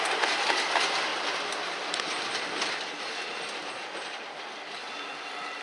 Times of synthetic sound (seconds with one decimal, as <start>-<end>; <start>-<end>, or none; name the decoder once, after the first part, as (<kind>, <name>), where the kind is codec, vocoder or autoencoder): none